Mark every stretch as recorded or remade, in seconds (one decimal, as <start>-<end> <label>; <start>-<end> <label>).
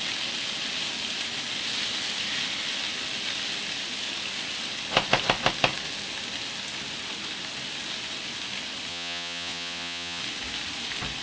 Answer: 0.0-8.9 recorded; 8.9-10.2 remade; 10.2-11.2 recorded